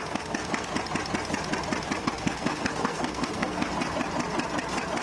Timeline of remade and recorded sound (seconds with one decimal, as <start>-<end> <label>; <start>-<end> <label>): 0.0-0.7 remade; 0.7-2.0 recorded; 2.0-3.7 remade; 3.7-5.0 recorded